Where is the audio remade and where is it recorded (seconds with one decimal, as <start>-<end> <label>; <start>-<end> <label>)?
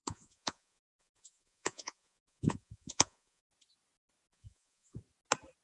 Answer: 0.0-3.4 remade; 3.4-4.3 recorded; 4.3-5.0 remade; 5.0-5.6 recorded